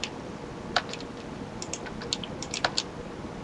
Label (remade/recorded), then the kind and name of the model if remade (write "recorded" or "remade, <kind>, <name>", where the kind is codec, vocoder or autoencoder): recorded